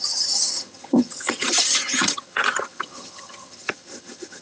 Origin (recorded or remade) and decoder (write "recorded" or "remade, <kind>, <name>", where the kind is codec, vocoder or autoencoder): remade, vocoder, HiFi-GAN